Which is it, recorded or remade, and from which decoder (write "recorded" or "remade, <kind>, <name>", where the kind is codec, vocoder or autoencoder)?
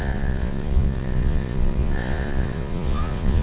remade, vocoder, Vocos